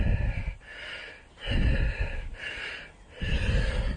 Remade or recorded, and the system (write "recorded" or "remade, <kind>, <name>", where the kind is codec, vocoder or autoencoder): recorded